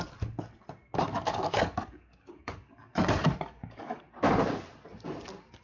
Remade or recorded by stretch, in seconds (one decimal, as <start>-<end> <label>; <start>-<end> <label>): 0.0-1.1 recorded; 1.1-4.0 remade; 4.0-5.6 recorded